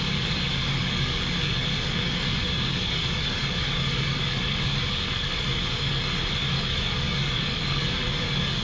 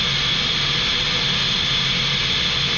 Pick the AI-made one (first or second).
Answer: first